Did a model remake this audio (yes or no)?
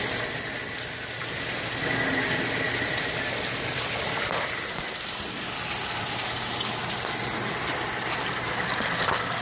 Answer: no